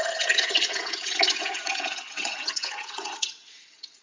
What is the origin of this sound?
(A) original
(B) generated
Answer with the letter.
B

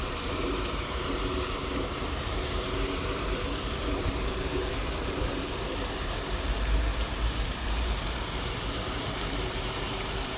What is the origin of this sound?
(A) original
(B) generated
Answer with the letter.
B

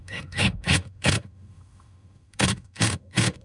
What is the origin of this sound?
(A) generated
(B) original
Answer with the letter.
A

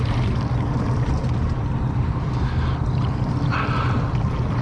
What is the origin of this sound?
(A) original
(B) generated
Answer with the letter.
A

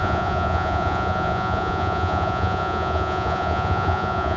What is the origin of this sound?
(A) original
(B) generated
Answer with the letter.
B